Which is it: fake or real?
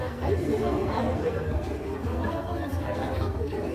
fake